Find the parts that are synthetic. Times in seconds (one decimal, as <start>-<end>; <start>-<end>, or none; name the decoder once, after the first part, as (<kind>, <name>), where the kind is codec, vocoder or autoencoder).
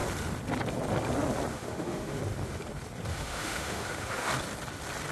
1.5-2.2 (autoencoder, DAC-VAE); 3.1-4.3